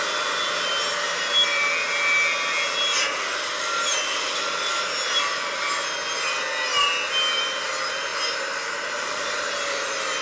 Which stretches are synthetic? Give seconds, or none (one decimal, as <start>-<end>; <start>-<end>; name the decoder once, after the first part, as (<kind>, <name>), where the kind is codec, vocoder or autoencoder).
none